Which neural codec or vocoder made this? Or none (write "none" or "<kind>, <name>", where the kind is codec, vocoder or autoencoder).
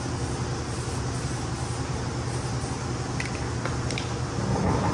none